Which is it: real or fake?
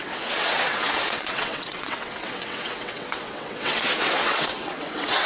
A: fake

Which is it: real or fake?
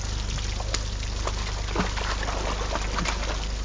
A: real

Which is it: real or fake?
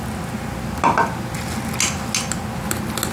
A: real